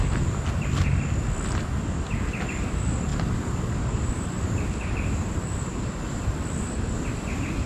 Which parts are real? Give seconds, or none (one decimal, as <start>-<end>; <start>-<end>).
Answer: 0.0-7.7